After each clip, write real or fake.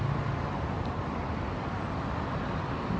real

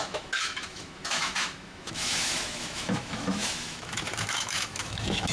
fake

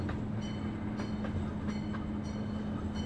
real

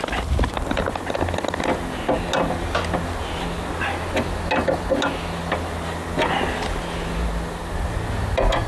real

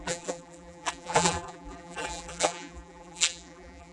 fake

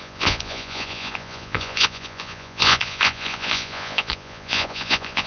fake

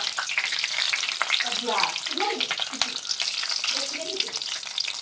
real